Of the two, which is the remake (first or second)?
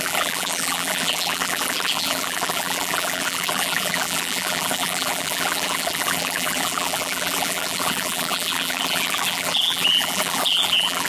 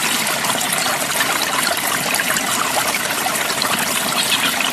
first